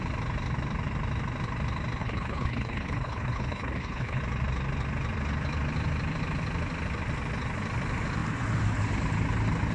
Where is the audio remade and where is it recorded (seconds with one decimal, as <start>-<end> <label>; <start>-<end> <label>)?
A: 0.0-2.0 recorded; 2.0-4.2 remade; 4.2-9.7 recorded